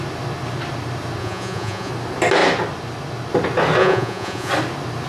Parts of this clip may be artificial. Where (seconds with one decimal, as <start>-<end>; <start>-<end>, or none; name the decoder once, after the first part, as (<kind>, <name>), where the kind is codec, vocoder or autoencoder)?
1.2-1.9 (vocoder, Vocos); 3.8-4.5